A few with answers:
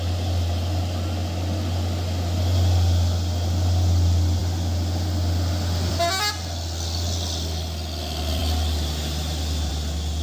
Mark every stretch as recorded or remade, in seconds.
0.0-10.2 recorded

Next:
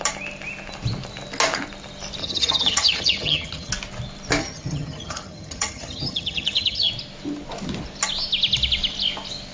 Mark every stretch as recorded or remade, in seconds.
0.0-2.2 recorded; 2.2-3.7 remade; 3.7-4.4 recorded; 4.4-6.9 remade; 6.9-9.5 recorded

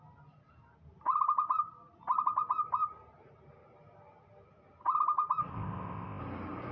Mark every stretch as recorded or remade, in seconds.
0.0-5.5 recorded; 5.5-6.2 remade; 6.2-6.7 recorded

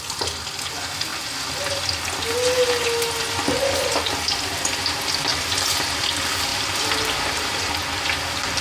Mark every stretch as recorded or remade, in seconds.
0.0-5.3 recorded; 5.3-6.0 remade; 6.0-6.5 recorded; 6.5-8.0 remade; 8.0-8.6 recorded